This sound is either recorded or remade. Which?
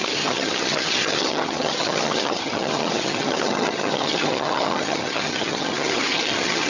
remade